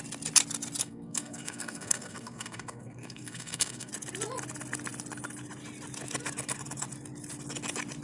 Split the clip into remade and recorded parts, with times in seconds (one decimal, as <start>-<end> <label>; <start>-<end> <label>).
0.0-0.8 recorded; 0.8-3.9 remade; 3.9-8.0 recorded